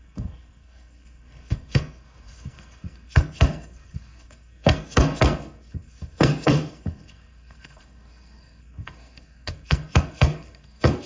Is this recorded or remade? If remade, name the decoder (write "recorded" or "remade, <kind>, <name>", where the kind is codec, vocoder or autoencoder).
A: remade, codec, SNAC